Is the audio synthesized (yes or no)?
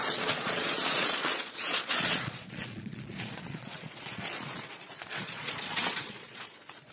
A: yes